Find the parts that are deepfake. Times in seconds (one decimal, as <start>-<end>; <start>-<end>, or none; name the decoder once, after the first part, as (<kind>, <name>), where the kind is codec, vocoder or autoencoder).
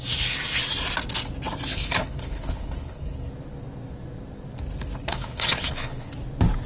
1.7-3.3 (codec, HILCodec); 5.0-6.1